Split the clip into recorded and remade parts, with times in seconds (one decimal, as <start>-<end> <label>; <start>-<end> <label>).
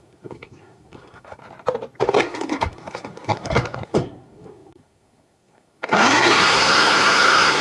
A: 0.0-1.4 remade; 1.4-2.1 recorded; 2.1-7.6 remade